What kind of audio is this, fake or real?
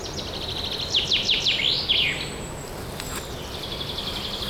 real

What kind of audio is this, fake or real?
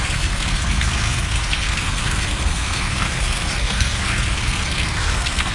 fake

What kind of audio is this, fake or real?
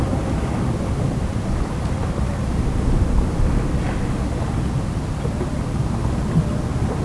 real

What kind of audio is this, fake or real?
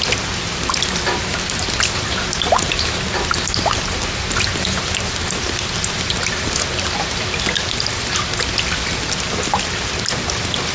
real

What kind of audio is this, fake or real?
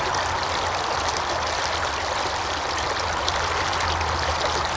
real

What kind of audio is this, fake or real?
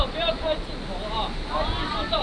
real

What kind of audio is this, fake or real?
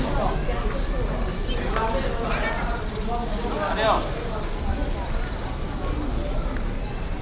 real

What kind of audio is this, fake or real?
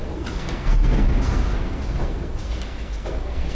fake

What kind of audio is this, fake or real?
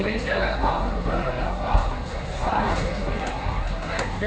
fake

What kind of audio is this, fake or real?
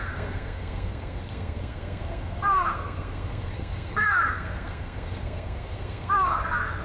fake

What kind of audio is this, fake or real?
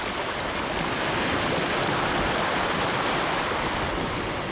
real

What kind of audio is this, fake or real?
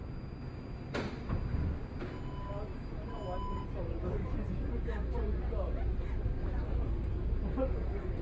real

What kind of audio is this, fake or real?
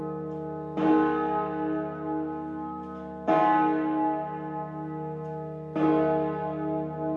real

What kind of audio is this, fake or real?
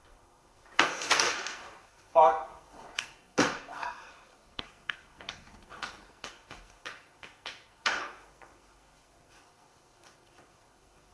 fake